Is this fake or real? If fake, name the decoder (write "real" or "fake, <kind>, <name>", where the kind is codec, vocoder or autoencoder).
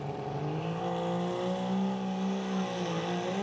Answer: real